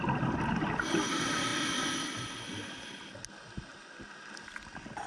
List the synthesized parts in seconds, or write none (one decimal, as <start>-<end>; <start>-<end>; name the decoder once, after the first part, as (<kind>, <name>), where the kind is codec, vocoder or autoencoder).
none

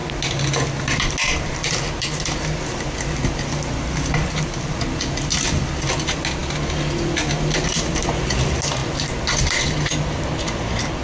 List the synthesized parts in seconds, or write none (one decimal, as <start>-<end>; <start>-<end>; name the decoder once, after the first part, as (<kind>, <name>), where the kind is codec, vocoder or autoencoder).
none

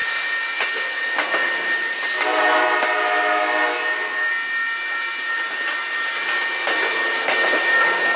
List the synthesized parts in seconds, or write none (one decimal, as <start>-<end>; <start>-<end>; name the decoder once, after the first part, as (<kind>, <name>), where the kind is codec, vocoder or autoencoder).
none

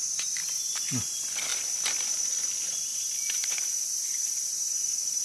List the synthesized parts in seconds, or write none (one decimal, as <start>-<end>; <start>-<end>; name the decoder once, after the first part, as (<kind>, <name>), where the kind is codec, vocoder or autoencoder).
none